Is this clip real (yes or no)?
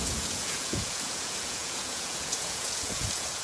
no